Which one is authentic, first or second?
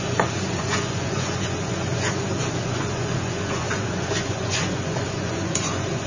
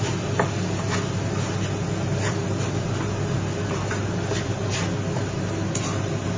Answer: second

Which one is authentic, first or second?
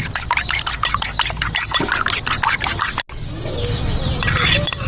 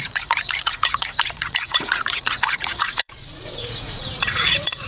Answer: first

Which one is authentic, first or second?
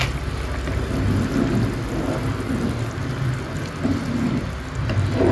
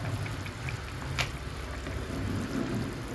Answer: first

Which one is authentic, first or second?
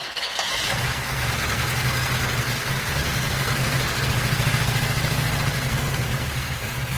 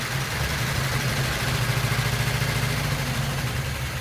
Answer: second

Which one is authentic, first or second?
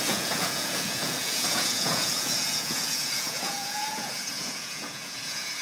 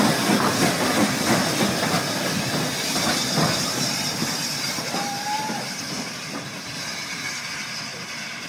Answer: second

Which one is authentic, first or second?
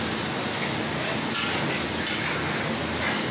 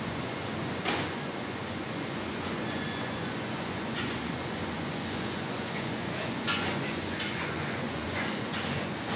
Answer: first